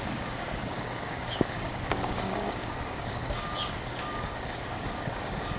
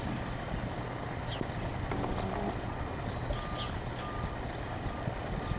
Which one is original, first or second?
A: second